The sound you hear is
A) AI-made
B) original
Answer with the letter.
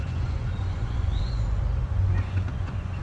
A